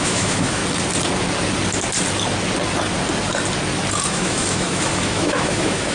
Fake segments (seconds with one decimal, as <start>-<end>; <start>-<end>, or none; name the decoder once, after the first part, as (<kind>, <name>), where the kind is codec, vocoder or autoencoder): 0.0-0.6 (autoencoder, DAC-VAE); 4.1-5.9